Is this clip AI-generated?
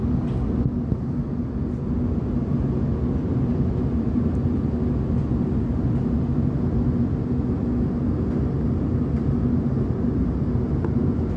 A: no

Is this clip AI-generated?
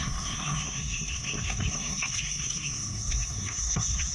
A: yes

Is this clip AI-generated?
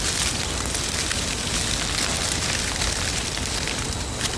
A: no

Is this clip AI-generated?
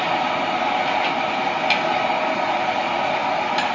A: no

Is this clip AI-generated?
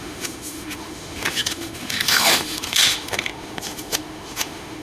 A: yes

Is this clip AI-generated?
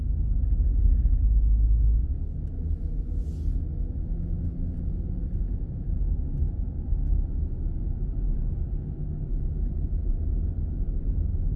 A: no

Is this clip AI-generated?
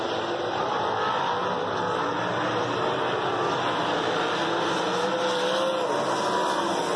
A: no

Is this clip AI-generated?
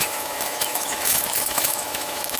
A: yes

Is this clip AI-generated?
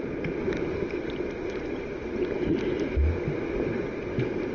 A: no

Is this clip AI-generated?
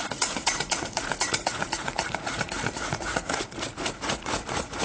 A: yes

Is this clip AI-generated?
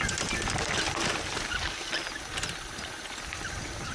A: no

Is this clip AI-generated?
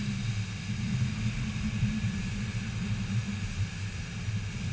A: no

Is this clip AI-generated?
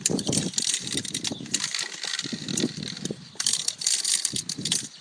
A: no